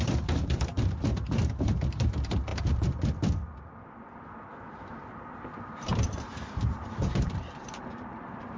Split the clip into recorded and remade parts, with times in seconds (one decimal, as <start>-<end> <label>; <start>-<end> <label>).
0.0-2.5 remade; 2.5-5.5 recorded; 5.5-5.9 remade; 5.9-6.7 recorded; 6.7-8.6 remade